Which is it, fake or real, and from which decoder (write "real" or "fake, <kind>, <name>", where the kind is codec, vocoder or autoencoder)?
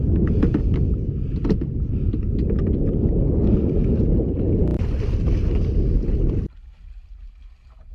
real